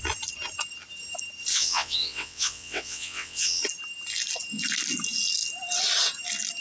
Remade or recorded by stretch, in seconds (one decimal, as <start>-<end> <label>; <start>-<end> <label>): 0.0-1.5 recorded; 1.5-3.6 remade; 3.6-6.6 recorded